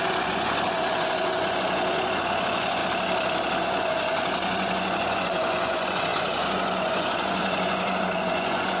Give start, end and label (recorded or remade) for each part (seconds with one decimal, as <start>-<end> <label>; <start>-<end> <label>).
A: 0.0-2.8 remade; 2.8-3.6 recorded; 3.6-8.8 remade